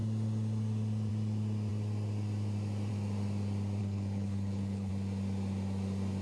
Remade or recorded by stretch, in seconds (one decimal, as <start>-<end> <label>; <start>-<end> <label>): 0.0-3.8 recorded; 3.8-4.9 remade; 4.9-6.2 recorded